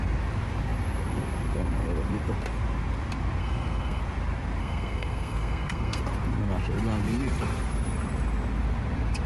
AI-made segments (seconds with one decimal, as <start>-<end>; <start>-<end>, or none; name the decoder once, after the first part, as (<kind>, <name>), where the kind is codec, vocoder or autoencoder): 3.4-4.0 (codec, SNAC); 4.6-6.0